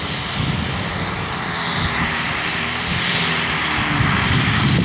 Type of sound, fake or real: real